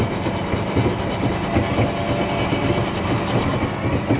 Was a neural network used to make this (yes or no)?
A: no